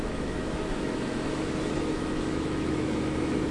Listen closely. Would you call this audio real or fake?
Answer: fake